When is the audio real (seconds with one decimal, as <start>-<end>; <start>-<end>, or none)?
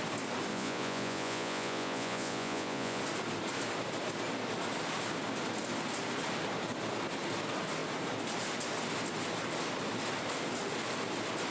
0.0-0.5; 3.0-11.5